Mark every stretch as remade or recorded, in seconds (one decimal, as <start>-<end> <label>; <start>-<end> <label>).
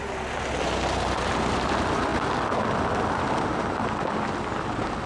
0.0-5.1 recorded